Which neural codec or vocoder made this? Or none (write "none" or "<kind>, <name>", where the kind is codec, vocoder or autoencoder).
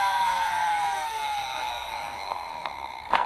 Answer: codec, SNAC